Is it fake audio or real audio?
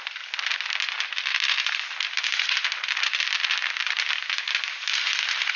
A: real